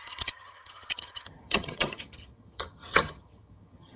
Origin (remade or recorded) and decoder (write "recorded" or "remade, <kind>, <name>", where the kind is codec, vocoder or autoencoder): remade, vocoder, HiFi-GAN